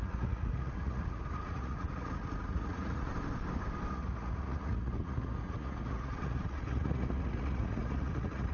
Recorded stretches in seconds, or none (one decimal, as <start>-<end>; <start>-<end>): 3.1-3.9